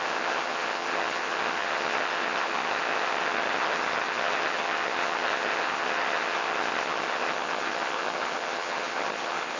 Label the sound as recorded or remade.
remade